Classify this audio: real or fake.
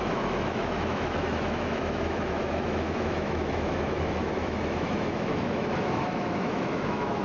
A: fake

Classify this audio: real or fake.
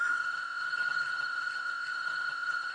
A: fake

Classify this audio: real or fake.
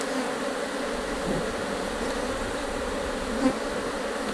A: real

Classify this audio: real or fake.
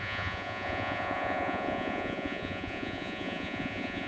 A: fake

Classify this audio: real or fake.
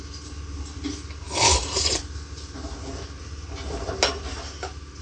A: real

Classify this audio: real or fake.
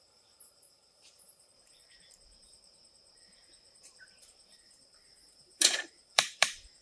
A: fake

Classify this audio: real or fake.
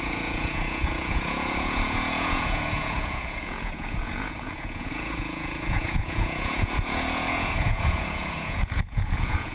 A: fake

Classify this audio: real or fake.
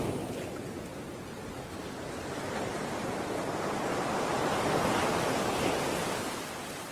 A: real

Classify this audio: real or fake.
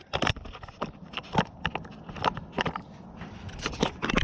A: real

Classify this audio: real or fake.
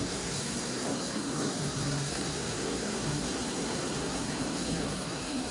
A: fake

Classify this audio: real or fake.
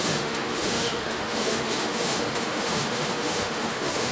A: fake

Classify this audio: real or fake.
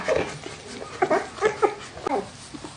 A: real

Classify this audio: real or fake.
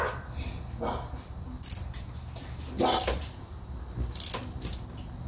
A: real